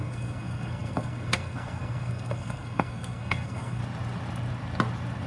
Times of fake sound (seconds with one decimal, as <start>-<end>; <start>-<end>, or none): 0.0-3.8